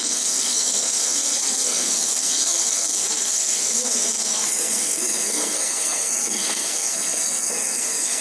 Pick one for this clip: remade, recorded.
remade